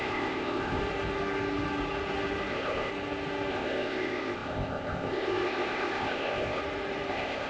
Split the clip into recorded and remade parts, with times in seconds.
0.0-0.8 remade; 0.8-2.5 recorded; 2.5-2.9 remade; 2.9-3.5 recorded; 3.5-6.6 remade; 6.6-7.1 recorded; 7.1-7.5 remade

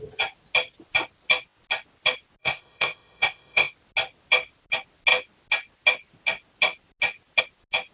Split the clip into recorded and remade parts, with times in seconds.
0.0-2.4 recorded; 2.4-3.7 remade; 3.7-7.9 recorded

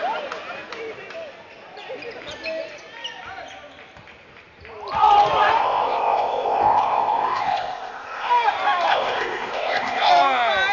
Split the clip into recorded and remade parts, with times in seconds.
0.0-5.6 recorded; 5.6-8.3 remade; 8.3-8.9 recorded; 8.9-10.1 remade; 10.1-10.7 recorded